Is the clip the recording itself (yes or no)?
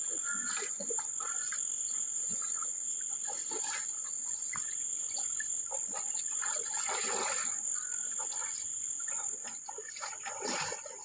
yes